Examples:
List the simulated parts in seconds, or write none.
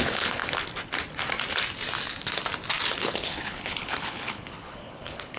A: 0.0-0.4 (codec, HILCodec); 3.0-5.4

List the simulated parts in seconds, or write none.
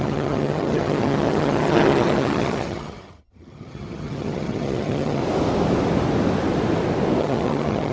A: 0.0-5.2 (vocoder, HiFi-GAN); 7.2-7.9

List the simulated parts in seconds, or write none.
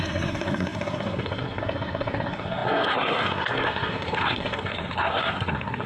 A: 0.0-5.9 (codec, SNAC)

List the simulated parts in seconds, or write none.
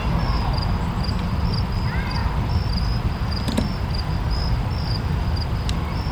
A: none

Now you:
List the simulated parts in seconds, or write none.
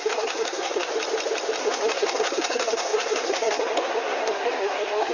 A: 0.0-0.9 (codec, SNAC); 1.6-5.1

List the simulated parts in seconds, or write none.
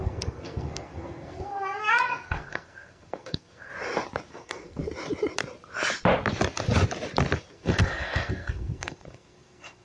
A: 0.0-3.7 (codec, SNAC); 4.3-4.8; 7.5-9.8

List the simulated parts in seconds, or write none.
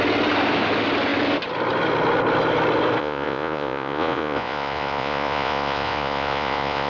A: 3.0-6.9 (vocoder, Vocos)